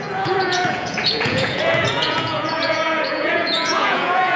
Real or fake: fake